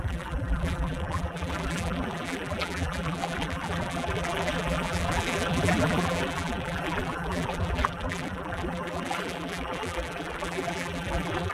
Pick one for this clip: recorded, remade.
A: remade